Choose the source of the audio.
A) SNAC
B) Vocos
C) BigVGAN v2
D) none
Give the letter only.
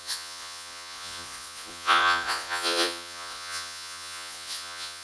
B